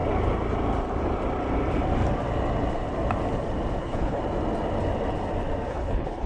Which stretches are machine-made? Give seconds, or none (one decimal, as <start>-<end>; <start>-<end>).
3.8-4.2; 5.7-6.3